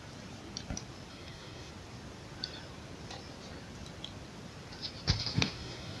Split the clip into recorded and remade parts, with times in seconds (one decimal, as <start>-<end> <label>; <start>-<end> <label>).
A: 0.0-1.1 recorded; 1.1-1.7 remade; 1.7-5.2 recorded; 5.2-6.0 remade

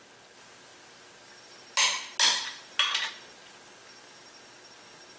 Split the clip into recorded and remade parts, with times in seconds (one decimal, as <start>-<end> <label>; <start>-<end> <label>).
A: 0.0-5.2 recorded

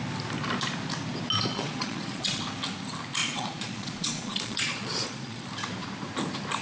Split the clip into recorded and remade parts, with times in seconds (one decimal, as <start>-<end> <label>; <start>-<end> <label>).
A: 0.0-1.5 recorded; 1.5-2.4 remade; 2.4-3.2 recorded; 3.2-5.5 remade; 5.5-6.6 recorded

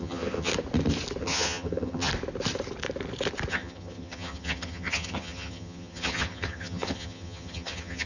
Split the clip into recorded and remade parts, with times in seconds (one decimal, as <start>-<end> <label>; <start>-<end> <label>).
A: 0.0-0.5 remade; 0.5-1.2 recorded; 1.2-2.1 remade; 2.1-3.5 recorded; 3.5-8.1 remade

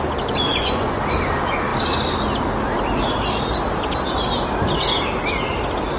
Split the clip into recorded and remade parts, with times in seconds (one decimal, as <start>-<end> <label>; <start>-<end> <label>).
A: 0.0-0.5 recorded; 0.5-1.0 remade; 1.0-6.0 recorded

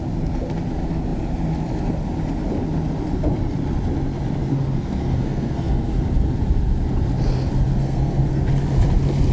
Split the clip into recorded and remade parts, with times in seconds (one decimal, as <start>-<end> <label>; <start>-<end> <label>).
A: 0.0-4.5 recorded; 4.5-5.9 remade; 5.9-7.8 recorded; 7.8-8.5 remade; 8.5-9.3 recorded

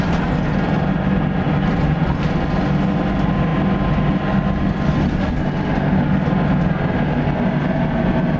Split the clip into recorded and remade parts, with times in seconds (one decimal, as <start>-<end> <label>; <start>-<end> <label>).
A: 0.0-8.4 recorded